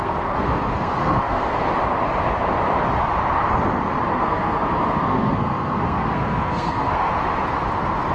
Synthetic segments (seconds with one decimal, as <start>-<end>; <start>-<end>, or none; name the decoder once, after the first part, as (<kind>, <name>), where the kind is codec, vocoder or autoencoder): 0.0-1.6 (codec, SNAC); 4.1-7.1